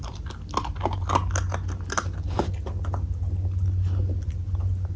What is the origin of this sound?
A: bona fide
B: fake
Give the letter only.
A